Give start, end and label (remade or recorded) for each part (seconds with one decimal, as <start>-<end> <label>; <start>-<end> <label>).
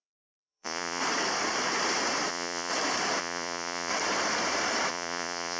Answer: 0.0-1.0 remade; 1.0-2.3 recorded; 2.3-2.7 remade; 2.7-3.2 recorded; 3.2-3.9 remade; 3.9-4.9 recorded; 4.9-5.6 remade